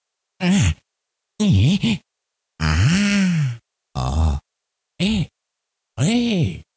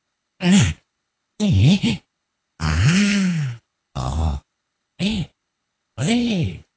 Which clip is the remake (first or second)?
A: second